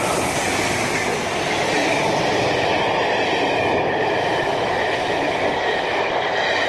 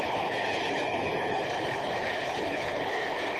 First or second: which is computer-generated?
second